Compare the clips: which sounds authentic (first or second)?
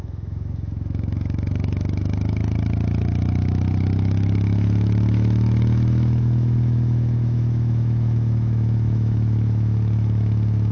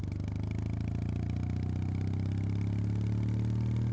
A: second